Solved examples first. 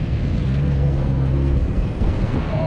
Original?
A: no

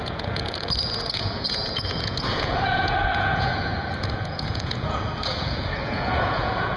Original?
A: no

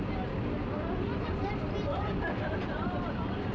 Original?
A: yes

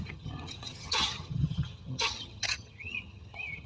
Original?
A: no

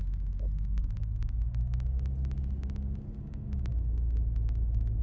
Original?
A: yes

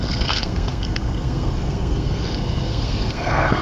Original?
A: no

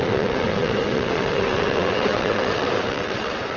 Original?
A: no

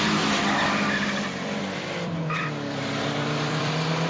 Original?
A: no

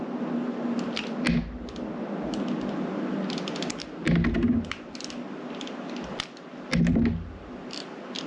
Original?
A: yes